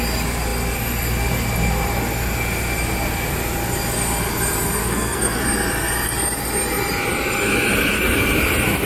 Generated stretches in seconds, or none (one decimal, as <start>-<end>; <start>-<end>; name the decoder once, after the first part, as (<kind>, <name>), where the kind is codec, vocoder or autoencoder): 4.8-5.4 (codec, SNAC)